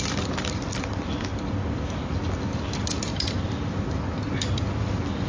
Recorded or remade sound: recorded